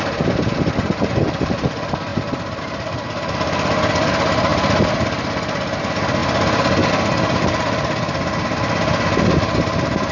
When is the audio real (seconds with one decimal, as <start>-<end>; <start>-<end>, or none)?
0.0-2.1; 2.6-10.1